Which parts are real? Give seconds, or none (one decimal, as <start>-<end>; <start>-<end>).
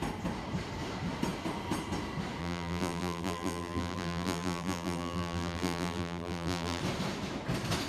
0.0-2.4; 6.8-7.9